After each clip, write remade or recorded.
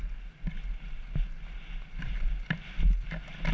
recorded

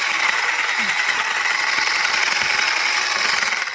recorded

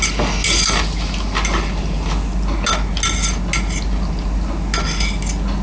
recorded